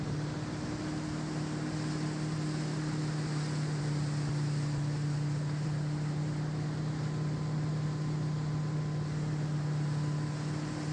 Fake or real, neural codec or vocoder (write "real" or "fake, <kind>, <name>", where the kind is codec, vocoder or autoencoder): real